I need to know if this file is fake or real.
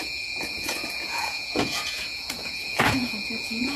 fake